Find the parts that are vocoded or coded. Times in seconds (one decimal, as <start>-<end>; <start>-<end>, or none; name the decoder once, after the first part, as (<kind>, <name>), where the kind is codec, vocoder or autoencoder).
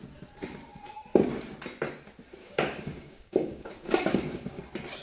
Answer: 2.4-4.6 (codec, DAC)